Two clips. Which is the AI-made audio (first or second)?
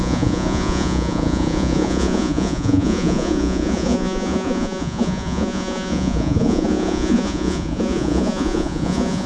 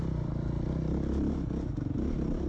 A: first